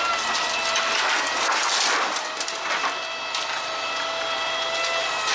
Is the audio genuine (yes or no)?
yes